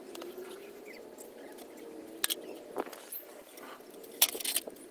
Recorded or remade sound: recorded